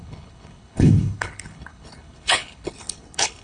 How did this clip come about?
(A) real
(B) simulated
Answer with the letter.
B